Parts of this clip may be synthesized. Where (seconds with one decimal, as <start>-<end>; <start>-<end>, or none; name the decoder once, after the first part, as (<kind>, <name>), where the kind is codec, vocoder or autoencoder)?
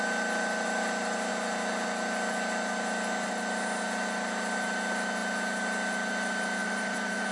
6.6-7.3 (vocoder, BigVGAN v2)